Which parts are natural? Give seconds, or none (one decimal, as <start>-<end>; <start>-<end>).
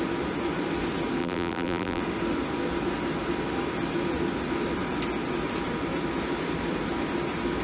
0.0-1.2; 2.0-7.6